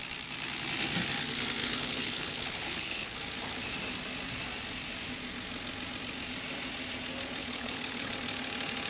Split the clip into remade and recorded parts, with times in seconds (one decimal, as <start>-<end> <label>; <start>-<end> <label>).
0.0-1.6 recorded; 1.6-3.2 remade; 3.2-7.4 recorded; 7.4-8.1 remade; 8.1-8.9 recorded